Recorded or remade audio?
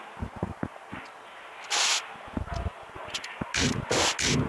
recorded